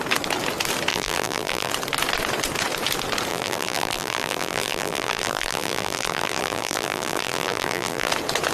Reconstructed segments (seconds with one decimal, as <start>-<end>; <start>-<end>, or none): 0.9-1.7; 3.3-8.1